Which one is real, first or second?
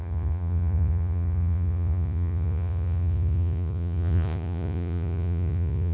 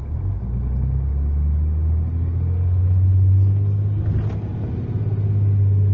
second